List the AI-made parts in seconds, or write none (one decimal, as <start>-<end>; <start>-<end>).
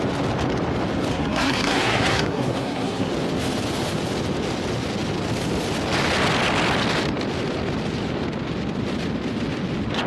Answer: 1.1-3.1